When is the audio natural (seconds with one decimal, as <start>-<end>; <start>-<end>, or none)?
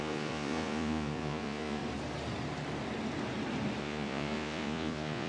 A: 1.8-3.8